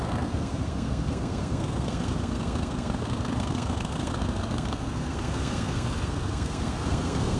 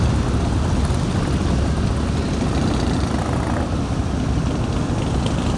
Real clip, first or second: second